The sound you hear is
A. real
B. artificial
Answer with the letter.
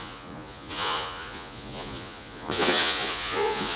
B